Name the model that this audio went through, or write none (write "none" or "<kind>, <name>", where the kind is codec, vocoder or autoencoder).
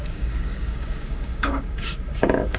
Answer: codec, DAC